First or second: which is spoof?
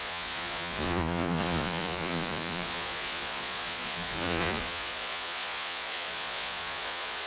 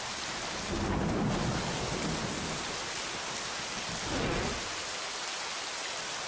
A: first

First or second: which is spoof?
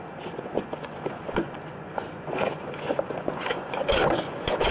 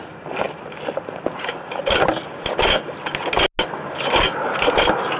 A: first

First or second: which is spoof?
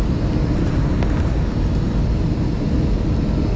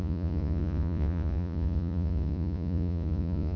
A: second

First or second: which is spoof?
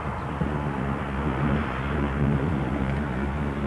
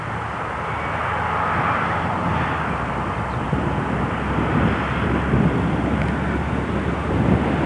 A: first